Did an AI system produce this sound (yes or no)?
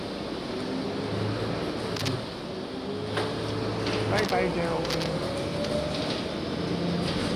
no